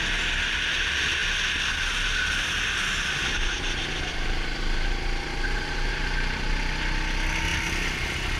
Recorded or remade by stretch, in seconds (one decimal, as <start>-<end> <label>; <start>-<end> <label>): 0.0-3.2 recorded; 3.2-5.9 remade; 5.9-8.4 recorded